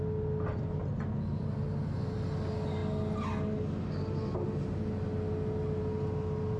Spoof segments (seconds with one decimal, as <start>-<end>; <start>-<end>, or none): none